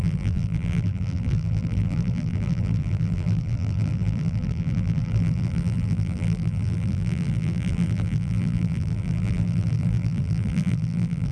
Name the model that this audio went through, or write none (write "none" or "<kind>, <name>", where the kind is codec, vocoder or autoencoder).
vocoder, BigVGAN v2